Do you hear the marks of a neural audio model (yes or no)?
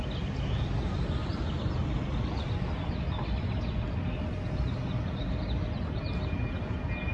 no